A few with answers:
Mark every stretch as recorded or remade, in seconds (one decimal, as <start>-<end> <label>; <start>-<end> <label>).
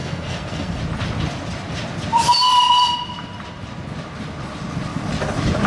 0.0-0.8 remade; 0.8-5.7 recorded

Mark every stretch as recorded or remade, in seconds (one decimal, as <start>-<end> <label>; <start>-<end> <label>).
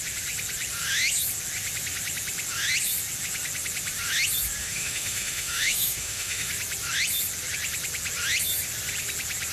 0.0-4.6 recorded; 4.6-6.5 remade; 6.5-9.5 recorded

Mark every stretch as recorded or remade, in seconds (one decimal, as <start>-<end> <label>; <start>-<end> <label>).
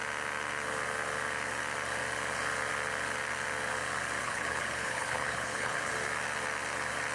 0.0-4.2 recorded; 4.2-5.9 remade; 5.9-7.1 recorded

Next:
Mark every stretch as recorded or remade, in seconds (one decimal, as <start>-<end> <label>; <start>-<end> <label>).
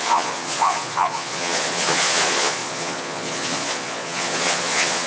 0.0-5.1 remade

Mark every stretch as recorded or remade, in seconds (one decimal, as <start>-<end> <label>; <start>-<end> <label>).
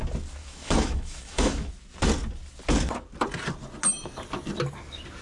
0.0-0.4 recorded; 0.4-1.7 remade; 1.7-5.2 recorded